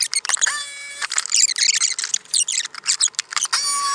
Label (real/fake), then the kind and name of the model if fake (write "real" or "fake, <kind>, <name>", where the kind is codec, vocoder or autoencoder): real